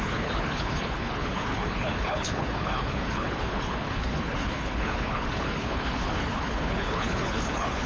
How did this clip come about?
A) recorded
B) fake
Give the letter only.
B